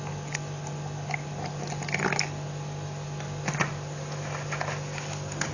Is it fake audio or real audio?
real